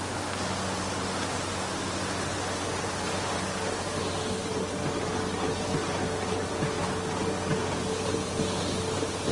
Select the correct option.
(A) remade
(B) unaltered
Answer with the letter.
B